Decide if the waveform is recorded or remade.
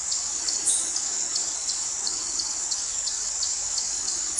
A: remade